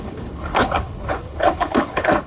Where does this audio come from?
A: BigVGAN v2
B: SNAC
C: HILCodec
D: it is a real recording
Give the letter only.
C